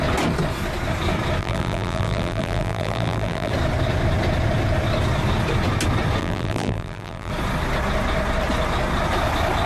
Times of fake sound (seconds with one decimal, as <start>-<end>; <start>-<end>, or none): 1.4-3.5; 6.2-7.3